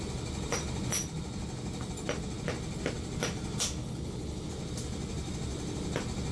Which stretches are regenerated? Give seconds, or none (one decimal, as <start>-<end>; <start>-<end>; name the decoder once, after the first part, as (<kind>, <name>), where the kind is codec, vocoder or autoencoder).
3.8-4.5 (codec, HILCodec)